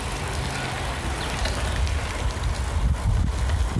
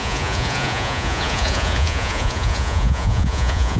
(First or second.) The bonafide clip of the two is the first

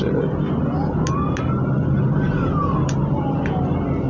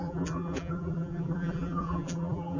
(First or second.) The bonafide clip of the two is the first